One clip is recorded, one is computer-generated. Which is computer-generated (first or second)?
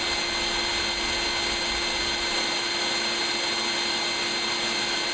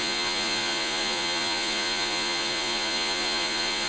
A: second